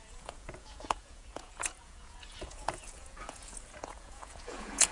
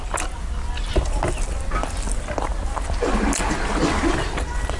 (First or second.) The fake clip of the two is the first